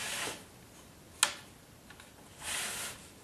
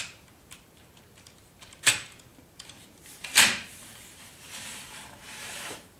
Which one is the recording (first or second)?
first